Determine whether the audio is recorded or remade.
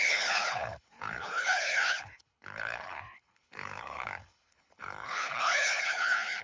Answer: remade